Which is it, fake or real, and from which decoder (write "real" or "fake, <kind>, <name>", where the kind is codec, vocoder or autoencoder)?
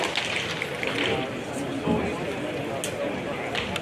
real